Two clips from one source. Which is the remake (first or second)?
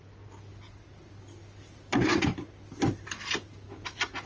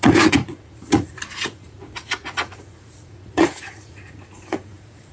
second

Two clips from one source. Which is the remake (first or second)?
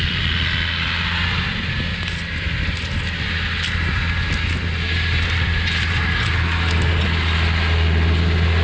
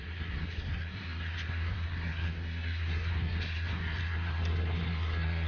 second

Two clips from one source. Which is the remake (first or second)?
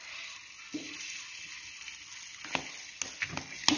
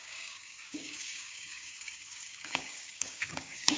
second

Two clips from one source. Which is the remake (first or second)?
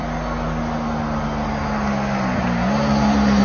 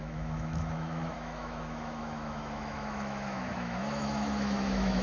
second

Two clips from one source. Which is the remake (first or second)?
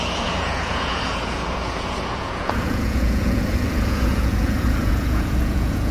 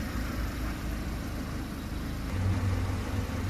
first